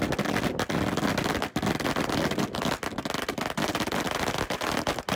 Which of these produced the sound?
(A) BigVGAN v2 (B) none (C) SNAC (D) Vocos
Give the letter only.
B